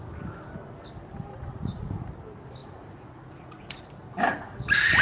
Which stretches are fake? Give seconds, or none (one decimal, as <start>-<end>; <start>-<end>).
1.3-2.1; 2.6-3.8